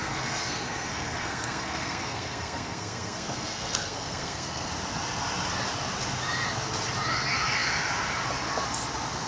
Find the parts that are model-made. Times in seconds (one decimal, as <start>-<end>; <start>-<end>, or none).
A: 0.0-4.7